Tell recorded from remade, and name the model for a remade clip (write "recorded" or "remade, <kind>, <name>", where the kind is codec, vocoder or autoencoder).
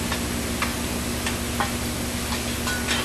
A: recorded